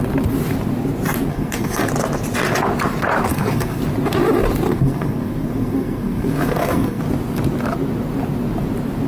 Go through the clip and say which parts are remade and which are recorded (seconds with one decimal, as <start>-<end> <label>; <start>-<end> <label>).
0.0-1.3 recorded; 1.3-1.9 remade; 1.9-3.3 recorded; 3.3-3.8 remade; 3.8-4.7 recorded; 4.7-7.0 remade; 7.0-9.1 recorded